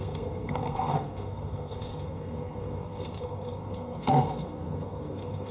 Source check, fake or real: fake